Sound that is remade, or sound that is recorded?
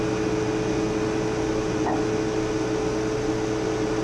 recorded